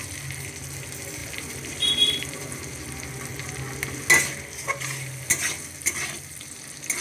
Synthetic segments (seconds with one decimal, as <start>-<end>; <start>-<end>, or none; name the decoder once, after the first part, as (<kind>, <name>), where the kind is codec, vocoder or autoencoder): 1.2-2.8 (vocoder, BigVGAN v2)